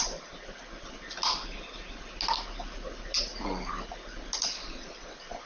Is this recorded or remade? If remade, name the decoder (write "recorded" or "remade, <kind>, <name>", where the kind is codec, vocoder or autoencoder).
recorded